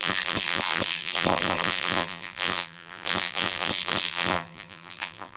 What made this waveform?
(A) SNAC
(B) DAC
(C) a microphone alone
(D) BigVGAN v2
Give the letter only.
D